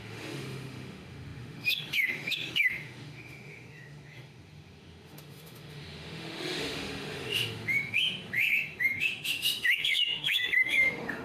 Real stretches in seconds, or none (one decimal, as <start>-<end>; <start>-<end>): none